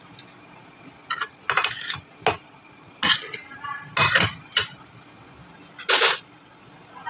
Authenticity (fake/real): real